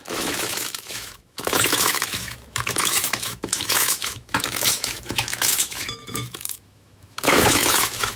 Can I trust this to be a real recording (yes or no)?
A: no